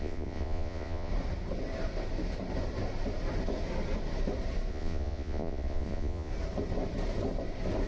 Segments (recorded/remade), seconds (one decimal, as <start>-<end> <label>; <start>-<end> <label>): 0.0-1.1 remade; 1.1-4.7 recorded; 4.7-6.3 remade; 6.3-7.9 recorded

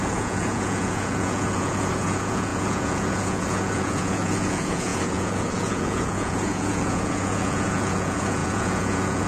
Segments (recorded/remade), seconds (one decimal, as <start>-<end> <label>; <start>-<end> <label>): 0.0-9.3 remade

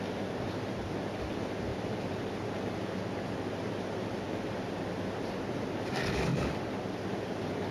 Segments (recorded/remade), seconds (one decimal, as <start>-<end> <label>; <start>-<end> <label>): 0.0-1.7 recorded; 1.7-2.3 remade; 2.3-7.7 recorded

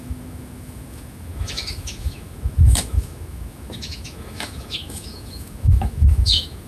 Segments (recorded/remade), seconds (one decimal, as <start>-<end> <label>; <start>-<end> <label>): 0.0-6.7 remade

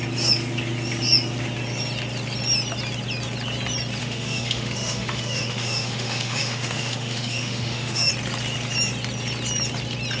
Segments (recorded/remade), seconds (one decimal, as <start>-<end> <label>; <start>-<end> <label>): 0.0-4.0 recorded; 4.0-8.1 remade; 8.1-10.2 recorded